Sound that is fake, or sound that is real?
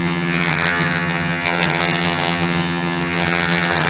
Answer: fake